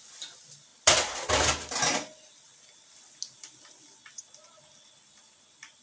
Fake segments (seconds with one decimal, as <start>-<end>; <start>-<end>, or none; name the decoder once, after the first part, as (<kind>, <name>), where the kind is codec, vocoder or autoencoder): none